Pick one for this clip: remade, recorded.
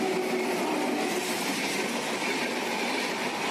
recorded